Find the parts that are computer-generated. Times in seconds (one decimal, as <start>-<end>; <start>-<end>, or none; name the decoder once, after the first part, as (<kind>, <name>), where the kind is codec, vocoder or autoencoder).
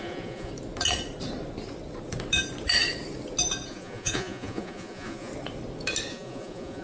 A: 0.0-0.5 (vocoder, Vocos); 3.7-5.3; 6.1-6.8